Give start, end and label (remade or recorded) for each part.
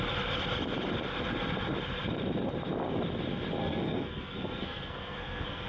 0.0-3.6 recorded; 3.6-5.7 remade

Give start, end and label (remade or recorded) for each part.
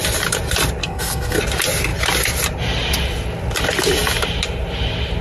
0.0-0.8 recorded; 0.8-1.4 remade; 1.4-5.2 recorded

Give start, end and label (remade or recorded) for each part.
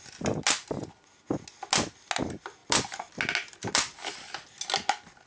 0.0-5.3 recorded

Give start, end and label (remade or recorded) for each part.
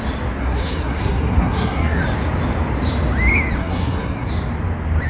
0.0-0.4 recorded; 0.4-2.0 remade; 2.0-3.6 recorded; 3.6-4.3 remade; 4.3-5.1 recorded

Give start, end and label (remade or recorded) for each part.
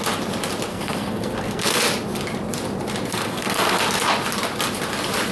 0.0-0.7 recorded; 0.7-1.8 remade; 1.8-3.1 recorded; 3.1-3.8 remade; 3.8-5.3 recorded